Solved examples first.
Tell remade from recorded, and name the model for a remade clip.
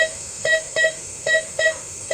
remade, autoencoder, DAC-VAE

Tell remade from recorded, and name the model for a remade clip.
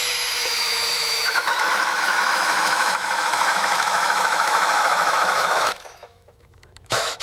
remade, autoencoder, DAC-VAE